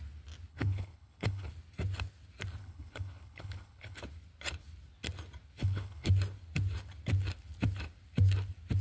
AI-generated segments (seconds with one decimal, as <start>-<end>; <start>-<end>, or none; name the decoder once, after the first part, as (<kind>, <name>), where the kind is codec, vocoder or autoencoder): 0.5-1.5 (codec, HILCodec); 2.6-4.0; 5.6-6.1